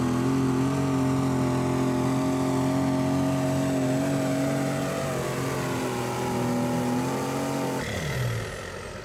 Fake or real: real